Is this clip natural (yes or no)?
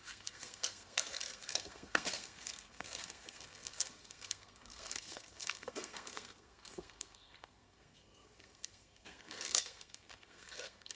no